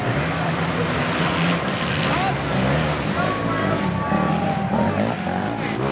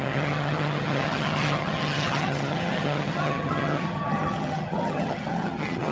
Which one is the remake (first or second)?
second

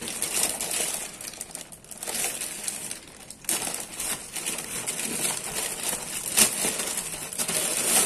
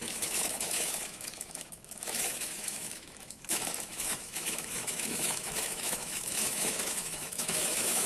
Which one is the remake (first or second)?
second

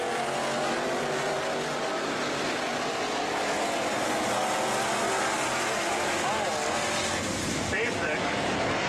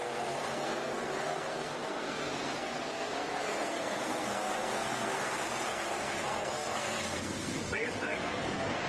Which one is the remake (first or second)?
second